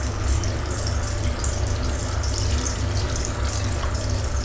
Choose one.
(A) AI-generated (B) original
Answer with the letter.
B